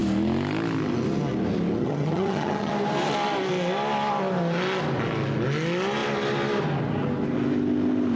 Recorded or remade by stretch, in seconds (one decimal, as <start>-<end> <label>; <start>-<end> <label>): 0.0-1.8 recorded; 1.8-2.7 remade; 2.7-8.2 recorded